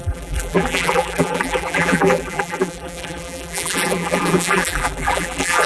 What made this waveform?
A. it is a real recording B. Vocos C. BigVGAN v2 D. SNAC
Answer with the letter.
C